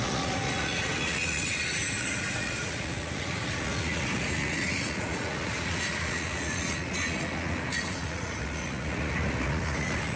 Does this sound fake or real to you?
fake